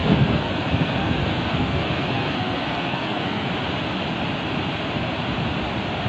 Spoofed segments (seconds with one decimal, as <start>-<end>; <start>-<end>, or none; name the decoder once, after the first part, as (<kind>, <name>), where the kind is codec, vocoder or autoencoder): 0.0-3.5 (codec, SNAC)